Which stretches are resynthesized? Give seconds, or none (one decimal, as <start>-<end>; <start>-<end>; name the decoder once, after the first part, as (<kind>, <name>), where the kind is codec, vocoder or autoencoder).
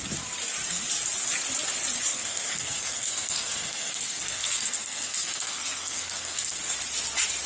2.1-6.6 (codec, SNAC)